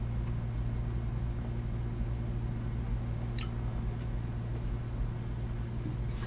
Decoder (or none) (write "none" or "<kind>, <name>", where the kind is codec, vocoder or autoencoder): none